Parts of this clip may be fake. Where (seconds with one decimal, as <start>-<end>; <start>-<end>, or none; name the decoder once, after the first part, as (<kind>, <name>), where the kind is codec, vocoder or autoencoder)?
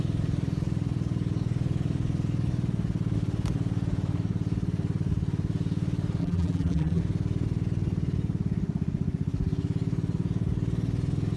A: 6.2-7.0 (vocoder, BigVGAN v2)